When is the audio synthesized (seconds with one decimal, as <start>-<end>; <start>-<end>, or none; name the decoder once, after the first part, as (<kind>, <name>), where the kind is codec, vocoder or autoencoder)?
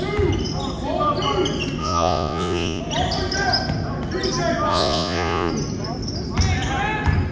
1.8-2.8 (vocoder, Vocos); 4.7-5.5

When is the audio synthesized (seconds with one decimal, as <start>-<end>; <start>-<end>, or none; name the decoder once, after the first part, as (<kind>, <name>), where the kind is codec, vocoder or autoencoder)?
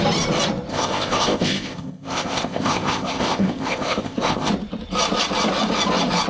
0.7-4.5 (codec, ZipCodec)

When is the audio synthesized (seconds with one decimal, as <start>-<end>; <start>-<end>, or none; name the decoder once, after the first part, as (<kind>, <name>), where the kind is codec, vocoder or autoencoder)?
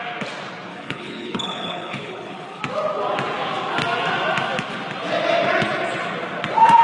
0.7-2.6 (codec, HILCodec)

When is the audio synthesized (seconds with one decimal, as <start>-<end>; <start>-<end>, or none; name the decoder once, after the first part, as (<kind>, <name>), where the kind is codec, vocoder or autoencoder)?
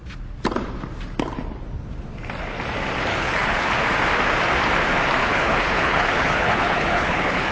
3.1-3.7 (codec, HILCodec); 5.2-7.5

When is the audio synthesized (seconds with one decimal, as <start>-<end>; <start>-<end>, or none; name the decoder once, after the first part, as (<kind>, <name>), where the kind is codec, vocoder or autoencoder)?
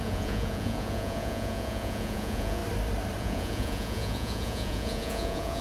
0.0-2.6 (vocoder, Vocos); 3.2-5.6